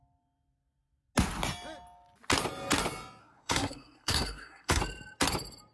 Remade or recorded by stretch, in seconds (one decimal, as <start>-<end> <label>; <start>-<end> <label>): 0.0-3.2 recorded; 3.2-4.8 remade; 4.8-5.7 recorded